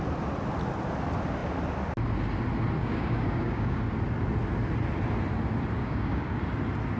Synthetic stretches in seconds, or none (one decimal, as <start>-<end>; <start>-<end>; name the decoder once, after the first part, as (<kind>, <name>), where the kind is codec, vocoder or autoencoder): 2.8-3.8 (codec, DAC); 5.8-6.4